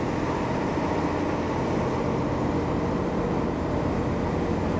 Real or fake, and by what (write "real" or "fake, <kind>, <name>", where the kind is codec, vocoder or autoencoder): real